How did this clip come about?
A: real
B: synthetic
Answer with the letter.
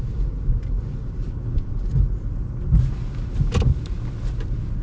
A